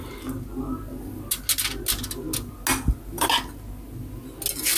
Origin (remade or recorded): recorded